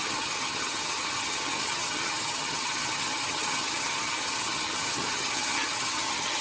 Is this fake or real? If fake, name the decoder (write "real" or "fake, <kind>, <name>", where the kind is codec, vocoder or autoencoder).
fake, vocoder, HiFi-GAN